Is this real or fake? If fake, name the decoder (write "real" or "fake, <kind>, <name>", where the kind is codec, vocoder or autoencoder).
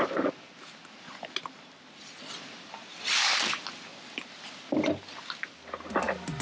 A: real